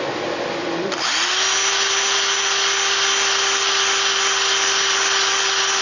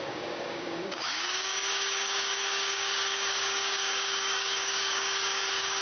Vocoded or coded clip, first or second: second